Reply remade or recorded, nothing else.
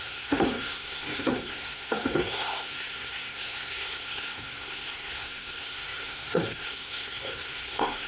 remade